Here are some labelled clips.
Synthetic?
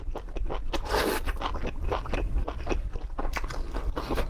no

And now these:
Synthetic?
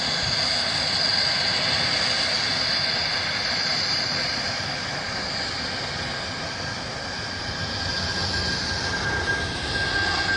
no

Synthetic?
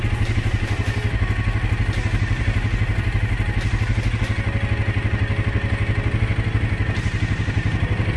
no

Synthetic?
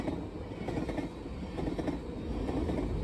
no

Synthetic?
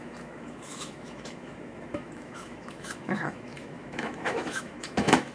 yes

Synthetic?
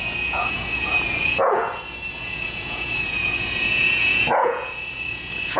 yes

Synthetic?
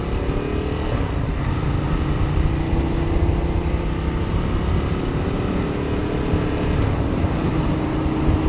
no